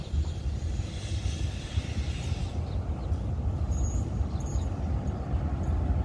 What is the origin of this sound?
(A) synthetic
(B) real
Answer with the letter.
B